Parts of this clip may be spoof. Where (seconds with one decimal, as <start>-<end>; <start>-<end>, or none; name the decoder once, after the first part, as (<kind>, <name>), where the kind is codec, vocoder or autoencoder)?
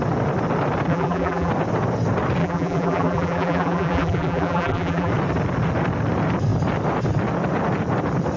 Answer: 0.9-1.5 (vocoder, BigVGAN v2); 2.4-5.1